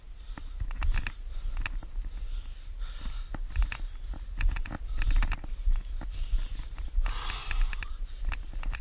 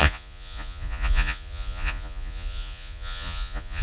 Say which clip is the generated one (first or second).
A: second